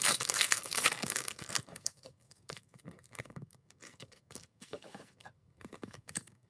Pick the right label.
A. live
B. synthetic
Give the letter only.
B